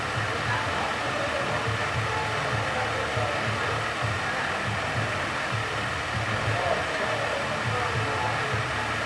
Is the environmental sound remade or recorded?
recorded